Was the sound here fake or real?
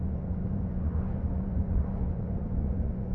fake